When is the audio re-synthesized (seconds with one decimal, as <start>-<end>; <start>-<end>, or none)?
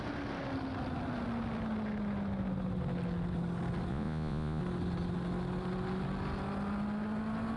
3.9-4.6